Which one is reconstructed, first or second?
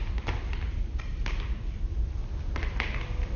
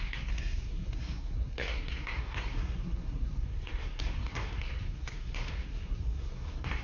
second